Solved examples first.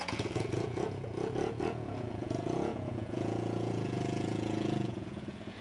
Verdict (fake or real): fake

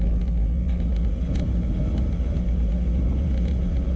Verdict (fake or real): real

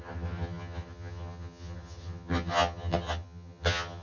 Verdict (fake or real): fake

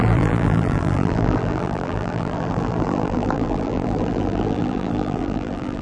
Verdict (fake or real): fake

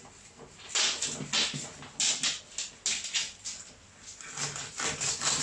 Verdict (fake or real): real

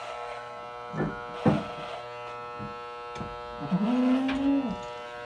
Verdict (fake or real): real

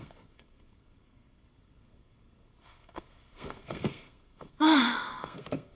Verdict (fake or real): fake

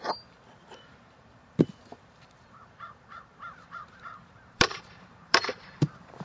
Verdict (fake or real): fake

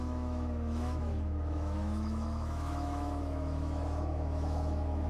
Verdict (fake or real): fake